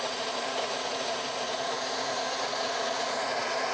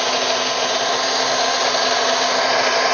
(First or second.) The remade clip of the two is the first